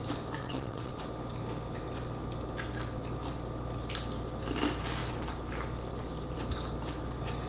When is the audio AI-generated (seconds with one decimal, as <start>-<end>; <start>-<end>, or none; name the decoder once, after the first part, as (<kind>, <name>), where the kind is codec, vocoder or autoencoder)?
0.4-1.0 (vocoder, WaveNeXt)